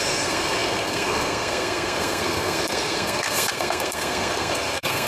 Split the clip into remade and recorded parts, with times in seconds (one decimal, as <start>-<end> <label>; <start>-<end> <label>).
0.0-5.1 remade